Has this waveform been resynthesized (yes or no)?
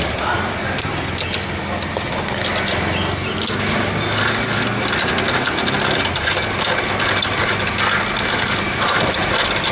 no